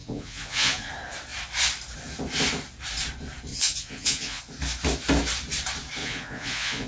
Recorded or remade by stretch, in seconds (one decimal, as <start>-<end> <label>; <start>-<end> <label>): 0.0-0.9 remade; 0.9-3.5 recorded; 3.5-4.4 remade; 4.4-6.0 recorded; 6.0-6.9 remade